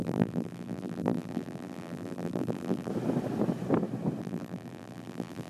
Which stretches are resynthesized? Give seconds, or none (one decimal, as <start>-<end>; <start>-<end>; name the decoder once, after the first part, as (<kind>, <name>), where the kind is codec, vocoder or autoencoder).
0.0-2.9 (vocoder, BigVGAN v2); 4.2-5.5